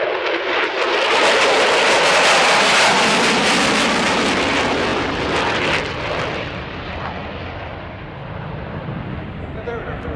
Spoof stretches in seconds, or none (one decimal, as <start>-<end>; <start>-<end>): none

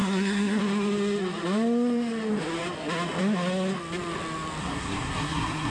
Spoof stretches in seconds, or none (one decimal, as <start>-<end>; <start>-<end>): 0.0-0.6; 4.6-5.7

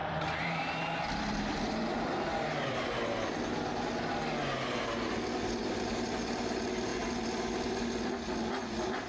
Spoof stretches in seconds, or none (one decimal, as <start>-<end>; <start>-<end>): 0.0-3.3; 6.9-7.9

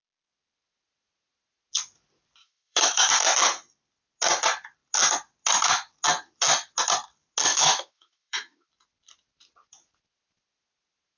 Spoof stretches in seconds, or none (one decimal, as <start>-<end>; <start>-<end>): 2.4-3.1; 7.5-8.7

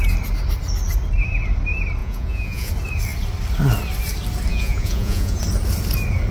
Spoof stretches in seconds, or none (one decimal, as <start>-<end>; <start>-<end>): 2.0-2.7; 4.5-5.4